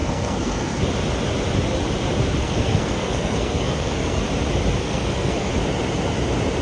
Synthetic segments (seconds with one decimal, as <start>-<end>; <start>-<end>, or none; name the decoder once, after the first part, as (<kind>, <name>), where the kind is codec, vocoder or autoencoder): 0.0-0.8 (codec, SNAC); 2.4-4.2; 4.8-5.5